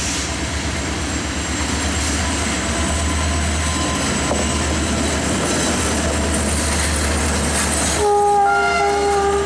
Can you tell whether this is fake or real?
real